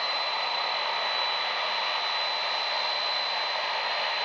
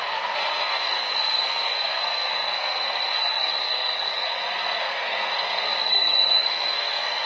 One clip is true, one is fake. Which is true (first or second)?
first